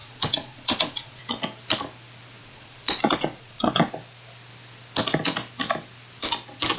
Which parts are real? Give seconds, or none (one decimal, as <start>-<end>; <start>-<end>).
1.2-2.4; 3.9-6.8